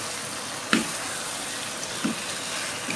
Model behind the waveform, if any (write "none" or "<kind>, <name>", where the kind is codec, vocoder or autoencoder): none